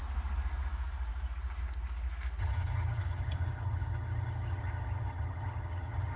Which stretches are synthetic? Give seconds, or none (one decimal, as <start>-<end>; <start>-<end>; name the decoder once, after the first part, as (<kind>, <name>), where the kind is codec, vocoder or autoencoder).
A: 2.4-6.2 (vocoder, HiFi-GAN)